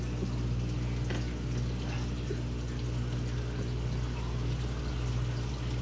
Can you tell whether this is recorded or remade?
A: recorded